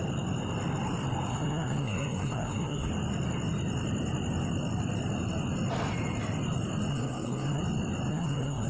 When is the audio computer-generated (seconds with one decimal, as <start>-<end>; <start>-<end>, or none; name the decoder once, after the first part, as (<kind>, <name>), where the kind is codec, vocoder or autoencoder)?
1.3-2.9 (codec, SNAC); 6.9-7.6; 8.1-8.7